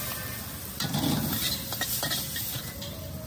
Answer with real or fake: real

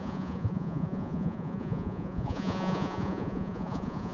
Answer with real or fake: fake